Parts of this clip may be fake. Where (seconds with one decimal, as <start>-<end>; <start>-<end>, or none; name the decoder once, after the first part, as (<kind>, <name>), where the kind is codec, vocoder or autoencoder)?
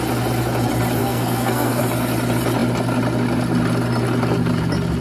1.0-1.8 (codec, SNAC)